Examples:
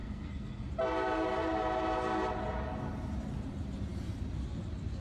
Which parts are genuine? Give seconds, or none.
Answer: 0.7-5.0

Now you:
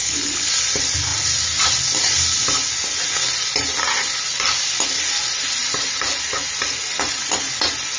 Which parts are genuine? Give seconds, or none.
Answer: 0.5-8.0

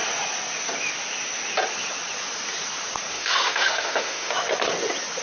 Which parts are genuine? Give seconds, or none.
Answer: 0.0-3.1; 4.3-5.2

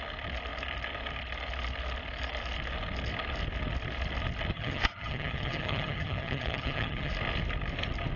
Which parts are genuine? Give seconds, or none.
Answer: 0.0-4.5; 7.1-8.2

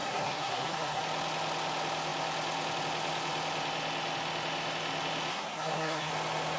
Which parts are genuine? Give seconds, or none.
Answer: 1.0-5.3; 6.1-6.6